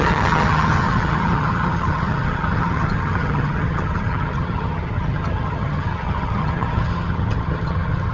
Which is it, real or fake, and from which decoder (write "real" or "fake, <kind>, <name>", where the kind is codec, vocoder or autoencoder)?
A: fake, vocoder, HiFi-GAN